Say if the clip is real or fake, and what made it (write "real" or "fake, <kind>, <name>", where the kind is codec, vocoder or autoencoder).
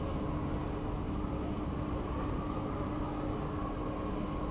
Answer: real